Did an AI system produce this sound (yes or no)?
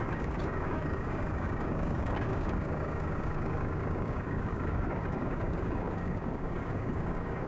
yes